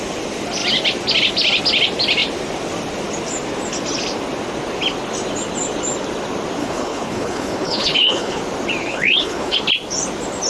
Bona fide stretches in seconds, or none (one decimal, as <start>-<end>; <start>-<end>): 0.0-6.6; 8.4-8.8; 9.6-10.5